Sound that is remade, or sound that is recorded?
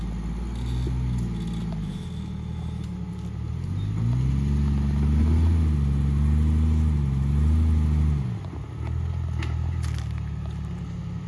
recorded